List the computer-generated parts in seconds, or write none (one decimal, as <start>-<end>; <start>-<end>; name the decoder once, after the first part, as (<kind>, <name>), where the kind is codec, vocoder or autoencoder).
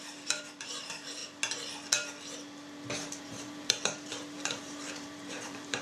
0.0-1.2 (vocoder, BigVGAN v2); 3.2-5.8